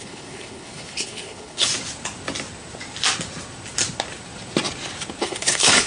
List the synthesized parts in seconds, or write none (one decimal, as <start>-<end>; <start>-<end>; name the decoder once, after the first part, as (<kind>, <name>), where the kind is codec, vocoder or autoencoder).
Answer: 0.0-1.7 (codec, HILCodec); 5.2-5.9